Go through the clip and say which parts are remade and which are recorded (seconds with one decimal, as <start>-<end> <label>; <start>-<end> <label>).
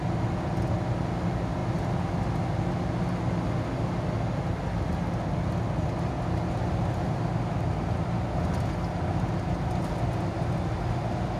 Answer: 0.0-11.4 recorded